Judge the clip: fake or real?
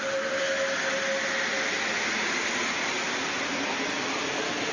real